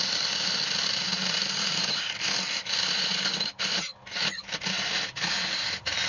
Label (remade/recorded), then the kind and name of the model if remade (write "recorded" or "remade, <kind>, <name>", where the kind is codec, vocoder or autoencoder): recorded